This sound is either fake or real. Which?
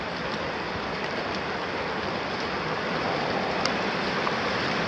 real